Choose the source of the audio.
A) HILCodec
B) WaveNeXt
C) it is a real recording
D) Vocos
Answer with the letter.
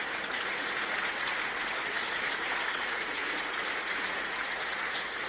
D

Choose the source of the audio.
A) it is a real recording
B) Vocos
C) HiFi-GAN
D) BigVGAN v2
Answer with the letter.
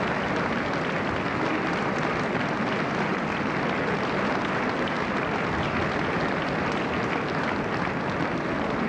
A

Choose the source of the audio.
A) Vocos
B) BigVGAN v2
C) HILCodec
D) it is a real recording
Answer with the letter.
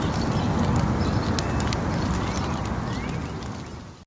D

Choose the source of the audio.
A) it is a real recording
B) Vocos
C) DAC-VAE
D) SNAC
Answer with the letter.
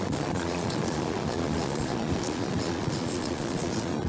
B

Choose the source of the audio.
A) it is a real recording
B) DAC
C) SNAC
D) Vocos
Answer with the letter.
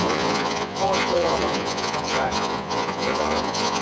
D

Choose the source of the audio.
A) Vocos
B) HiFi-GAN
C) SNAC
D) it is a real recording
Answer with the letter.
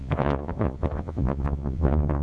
A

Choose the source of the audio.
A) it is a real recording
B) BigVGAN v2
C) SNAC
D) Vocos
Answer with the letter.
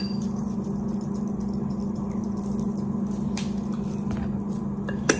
A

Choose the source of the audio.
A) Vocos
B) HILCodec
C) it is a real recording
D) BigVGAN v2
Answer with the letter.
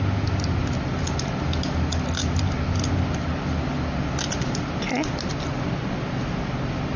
C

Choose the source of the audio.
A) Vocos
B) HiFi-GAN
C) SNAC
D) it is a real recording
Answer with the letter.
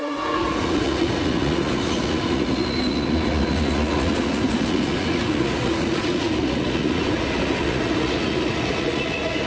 A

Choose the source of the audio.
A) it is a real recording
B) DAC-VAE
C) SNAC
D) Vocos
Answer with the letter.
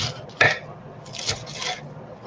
A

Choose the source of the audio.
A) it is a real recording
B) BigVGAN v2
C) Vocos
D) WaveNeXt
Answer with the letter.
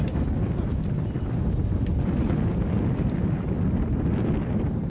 A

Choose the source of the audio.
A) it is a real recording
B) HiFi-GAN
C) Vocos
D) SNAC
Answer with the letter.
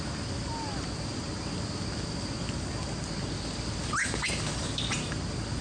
A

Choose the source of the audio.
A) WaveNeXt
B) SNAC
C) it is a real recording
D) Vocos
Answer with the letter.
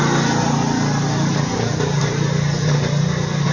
C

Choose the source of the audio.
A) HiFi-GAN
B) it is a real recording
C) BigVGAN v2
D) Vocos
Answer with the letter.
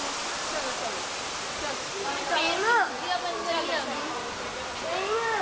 B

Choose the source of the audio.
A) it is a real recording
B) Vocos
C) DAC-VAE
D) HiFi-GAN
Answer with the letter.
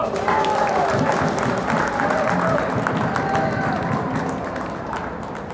A